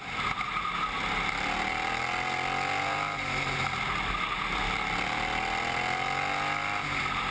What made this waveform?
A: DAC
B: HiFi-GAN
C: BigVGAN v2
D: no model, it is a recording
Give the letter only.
D